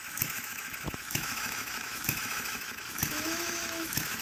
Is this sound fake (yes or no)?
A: yes